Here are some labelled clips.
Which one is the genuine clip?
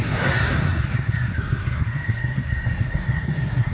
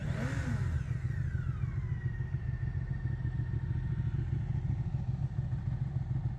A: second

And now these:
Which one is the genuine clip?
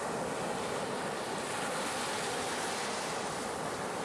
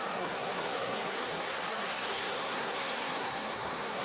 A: first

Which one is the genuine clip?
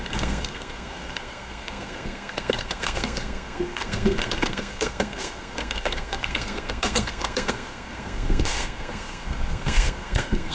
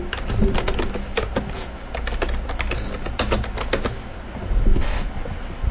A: second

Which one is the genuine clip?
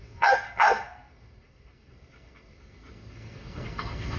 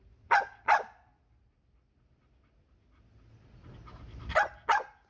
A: second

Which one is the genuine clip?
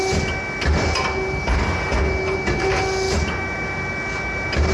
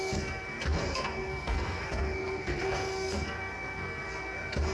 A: first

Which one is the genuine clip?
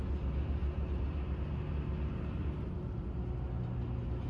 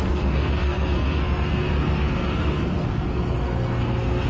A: first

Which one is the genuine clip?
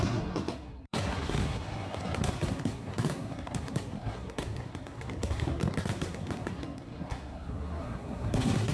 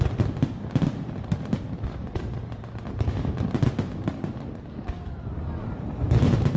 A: second